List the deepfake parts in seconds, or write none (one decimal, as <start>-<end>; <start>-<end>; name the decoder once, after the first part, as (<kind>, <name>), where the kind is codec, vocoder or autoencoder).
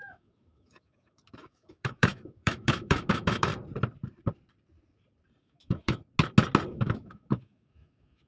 0.0-3.5 (autoencoder, DAC-VAE); 5.4-6.0; 6.7-8.3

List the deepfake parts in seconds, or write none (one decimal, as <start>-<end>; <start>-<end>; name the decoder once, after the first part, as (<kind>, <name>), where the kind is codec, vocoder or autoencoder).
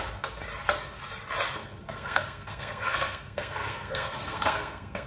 1.6-5.1 (codec, SNAC)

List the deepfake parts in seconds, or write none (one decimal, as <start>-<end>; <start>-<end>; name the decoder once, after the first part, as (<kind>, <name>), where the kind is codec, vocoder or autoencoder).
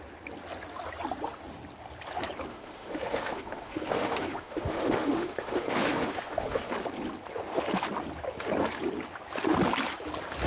2.5-6.7 (autoencoder, DAC-VAE)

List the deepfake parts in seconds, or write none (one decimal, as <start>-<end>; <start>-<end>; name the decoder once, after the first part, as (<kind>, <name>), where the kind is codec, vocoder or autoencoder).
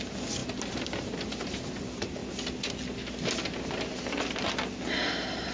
none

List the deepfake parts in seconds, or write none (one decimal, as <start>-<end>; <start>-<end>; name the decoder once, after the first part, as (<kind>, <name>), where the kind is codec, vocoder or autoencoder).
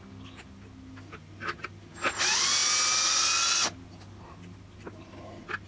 none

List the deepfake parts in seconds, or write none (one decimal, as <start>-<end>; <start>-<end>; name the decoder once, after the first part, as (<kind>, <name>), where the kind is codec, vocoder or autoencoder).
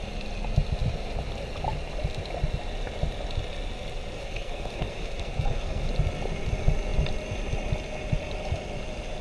4.2-5.9 (codec, SNAC)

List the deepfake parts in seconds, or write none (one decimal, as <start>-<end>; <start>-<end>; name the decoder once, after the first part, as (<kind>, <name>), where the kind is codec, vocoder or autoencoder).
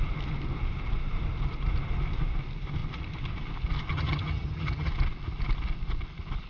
3.9-4.9 (vocoder, HiFi-GAN)